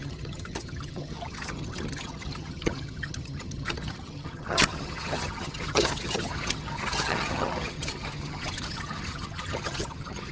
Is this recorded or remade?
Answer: remade